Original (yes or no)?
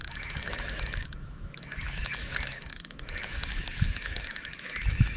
no